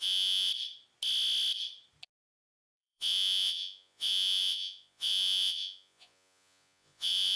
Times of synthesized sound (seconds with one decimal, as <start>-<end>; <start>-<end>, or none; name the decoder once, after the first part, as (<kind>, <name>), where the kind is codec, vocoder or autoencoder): 0.0-0.5 (vocoder, Vocos); 2.5-7.4